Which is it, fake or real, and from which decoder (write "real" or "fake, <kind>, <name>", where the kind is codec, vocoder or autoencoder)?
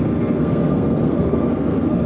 fake, codec, SNAC